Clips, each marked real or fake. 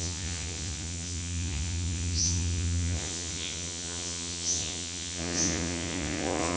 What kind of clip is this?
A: fake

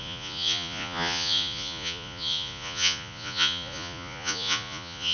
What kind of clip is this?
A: fake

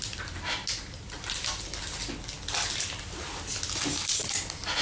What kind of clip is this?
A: real